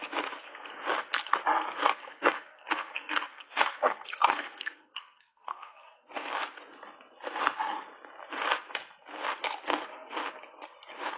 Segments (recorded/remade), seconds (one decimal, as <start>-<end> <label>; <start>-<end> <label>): 0.0-1.8 recorded; 1.8-6.1 remade; 6.1-11.2 recorded